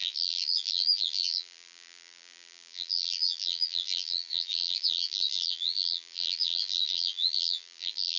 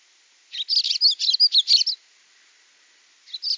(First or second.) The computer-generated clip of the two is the first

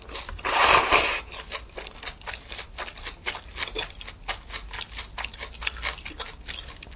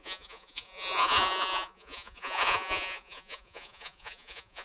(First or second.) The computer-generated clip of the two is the second